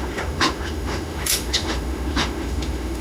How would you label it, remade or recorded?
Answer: remade